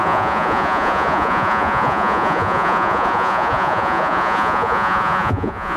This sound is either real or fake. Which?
fake